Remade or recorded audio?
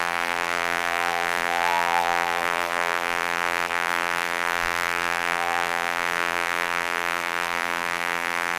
remade